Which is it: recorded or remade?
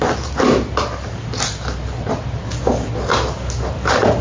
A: recorded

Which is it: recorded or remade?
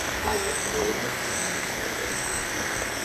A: remade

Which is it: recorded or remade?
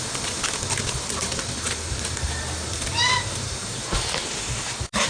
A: recorded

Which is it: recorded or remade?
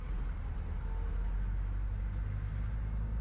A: recorded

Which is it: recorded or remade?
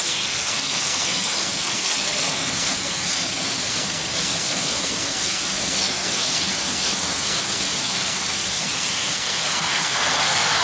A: remade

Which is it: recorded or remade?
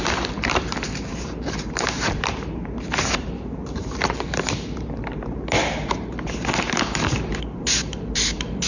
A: remade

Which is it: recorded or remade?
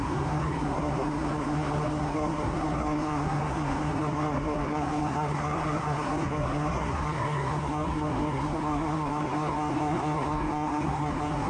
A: remade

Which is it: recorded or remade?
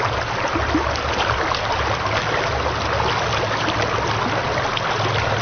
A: recorded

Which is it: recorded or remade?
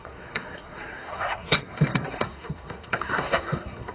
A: remade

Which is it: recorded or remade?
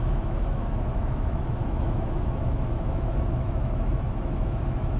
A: remade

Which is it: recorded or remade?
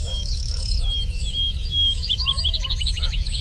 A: remade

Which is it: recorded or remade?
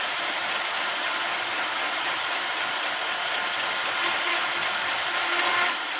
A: remade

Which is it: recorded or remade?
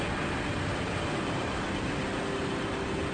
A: recorded